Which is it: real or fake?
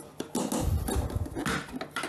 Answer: real